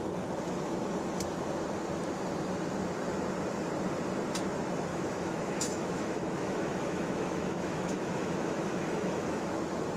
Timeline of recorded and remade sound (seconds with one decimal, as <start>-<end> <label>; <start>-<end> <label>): 0.0-4.9 recorded; 4.9-9.5 remade; 9.5-10.0 recorded